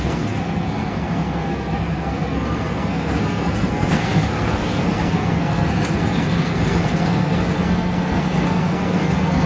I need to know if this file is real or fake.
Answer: fake